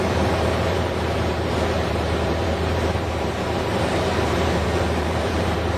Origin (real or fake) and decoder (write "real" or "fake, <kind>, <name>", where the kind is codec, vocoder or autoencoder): fake, vocoder, BigVGAN v2